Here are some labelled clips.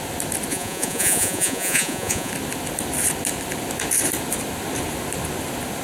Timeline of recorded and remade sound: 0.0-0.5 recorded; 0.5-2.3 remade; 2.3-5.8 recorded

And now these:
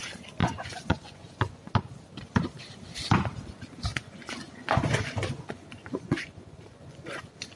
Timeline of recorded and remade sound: 0.0-0.4 recorded; 0.4-1.7 remade; 1.7-3.9 recorded; 3.9-7.6 remade

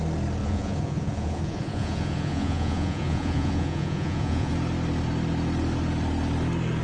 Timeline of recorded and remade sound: 0.0-0.4 recorded; 0.4-4.5 remade; 4.5-6.8 recorded

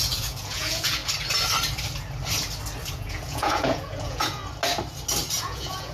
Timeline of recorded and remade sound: 0.0-1.0 remade; 1.0-2.9 recorded; 2.9-4.4 remade; 4.4-5.4 recorded; 5.4-5.9 remade

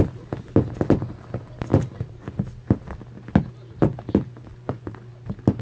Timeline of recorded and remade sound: 0.0-4.5 recorded; 4.5-5.1 remade; 5.1-5.6 recorded

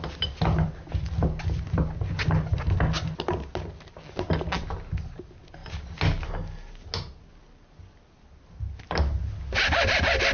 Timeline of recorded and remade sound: 0.0-10.3 recorded